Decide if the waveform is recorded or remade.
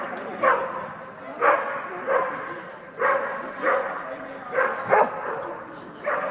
recorded